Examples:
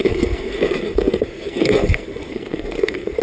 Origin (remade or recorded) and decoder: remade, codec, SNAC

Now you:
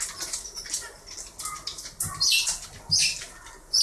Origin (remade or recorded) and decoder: recorded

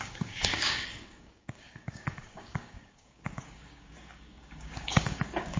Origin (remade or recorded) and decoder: remade, codec, DAC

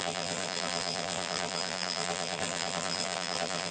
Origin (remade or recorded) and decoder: remade, vocoder, BigVGAN v2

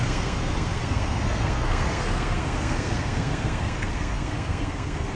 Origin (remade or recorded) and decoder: remade, codec, SNAC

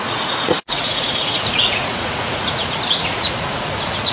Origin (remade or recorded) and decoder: remade, vocoder, Vocos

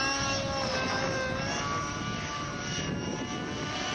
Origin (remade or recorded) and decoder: recorded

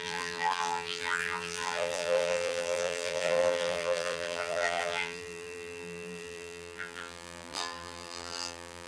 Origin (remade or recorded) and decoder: remade, vocoder, BigVGAN v2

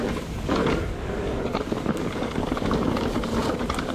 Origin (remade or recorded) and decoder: remade, codec, DAC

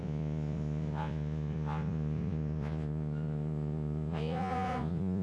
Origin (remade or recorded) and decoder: remade, vocoder, Vocos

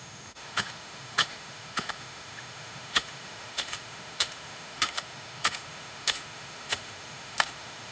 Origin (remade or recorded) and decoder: remade, autoencoder, DAC-VAE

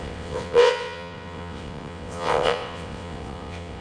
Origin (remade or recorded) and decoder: remade, vocoder, WaveNeXt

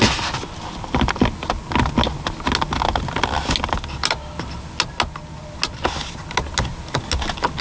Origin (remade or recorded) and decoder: recorded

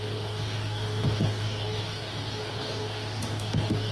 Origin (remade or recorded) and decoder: remade, codec, DAC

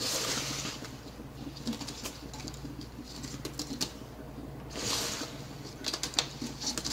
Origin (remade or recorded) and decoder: recorded